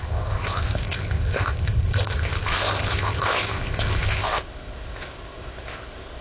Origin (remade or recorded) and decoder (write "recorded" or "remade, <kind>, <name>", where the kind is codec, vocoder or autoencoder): remade, codec, ZipCodec